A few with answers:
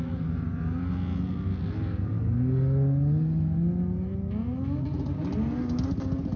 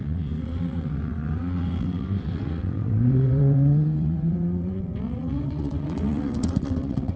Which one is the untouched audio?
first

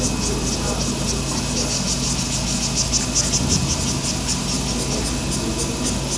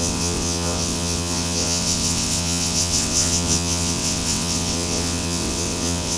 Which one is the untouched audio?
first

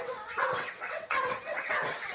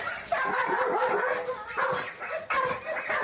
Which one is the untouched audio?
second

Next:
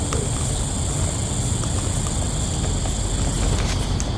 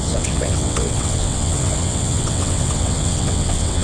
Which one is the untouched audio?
first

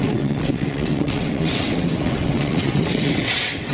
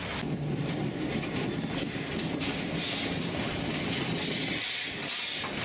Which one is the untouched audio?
second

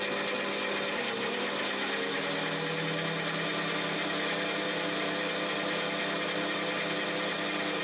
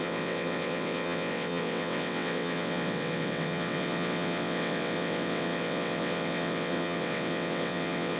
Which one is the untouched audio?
first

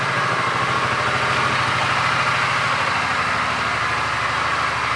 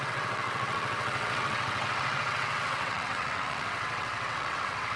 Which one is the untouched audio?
first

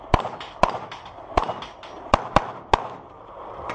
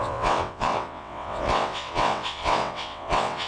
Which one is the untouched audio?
first